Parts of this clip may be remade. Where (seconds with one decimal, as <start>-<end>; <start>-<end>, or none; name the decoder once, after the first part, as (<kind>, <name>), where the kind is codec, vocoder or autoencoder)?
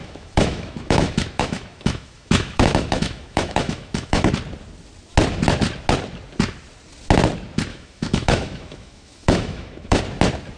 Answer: 0.0-4.3 (autoencoder, DAC-VAE); 7.7-10.0